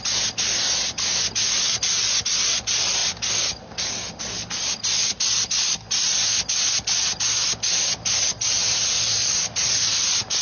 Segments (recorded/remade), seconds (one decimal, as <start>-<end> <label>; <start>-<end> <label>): 0.0-10.4 recorded